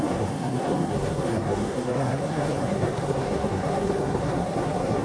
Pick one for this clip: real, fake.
fake